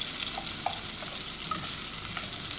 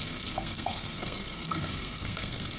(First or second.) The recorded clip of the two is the first